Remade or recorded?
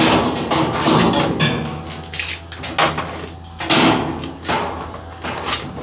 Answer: recorded